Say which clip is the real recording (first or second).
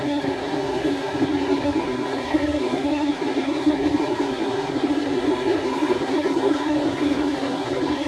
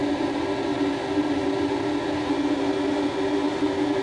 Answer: second